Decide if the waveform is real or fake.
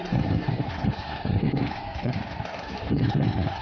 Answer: fake